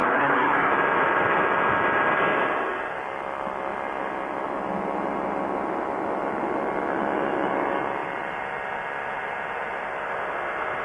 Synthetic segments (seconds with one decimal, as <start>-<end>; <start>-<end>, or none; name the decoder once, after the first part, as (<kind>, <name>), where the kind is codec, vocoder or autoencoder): 0.0-0.7 (codec, SNAC)